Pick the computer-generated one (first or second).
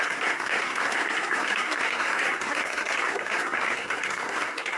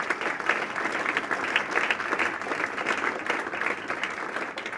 first